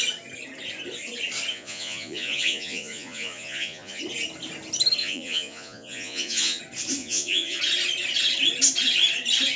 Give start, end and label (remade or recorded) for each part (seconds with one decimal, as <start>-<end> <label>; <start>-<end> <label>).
0.0-1.5 recorded; 1.5-4.0 remade; 4.0-5.0 recorded; 5.0-6.6 remade; 6.6-7.0 recorded; 7.0-7.6 remade; 7.6-9.6 recorded